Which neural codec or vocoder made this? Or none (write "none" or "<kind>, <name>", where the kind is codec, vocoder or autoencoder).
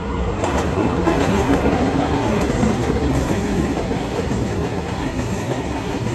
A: codec, SNAC